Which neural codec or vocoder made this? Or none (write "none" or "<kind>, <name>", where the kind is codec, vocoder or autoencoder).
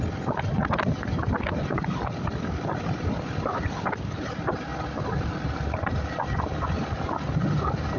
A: none